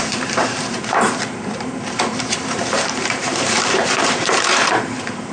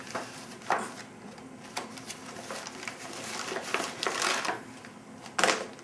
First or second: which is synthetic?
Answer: first